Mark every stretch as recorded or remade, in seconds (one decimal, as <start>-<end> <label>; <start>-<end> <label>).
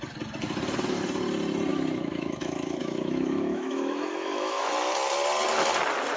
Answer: 0.0-1.7 recorded; 1.7-4.7 remade; 4.7-6.2 recorded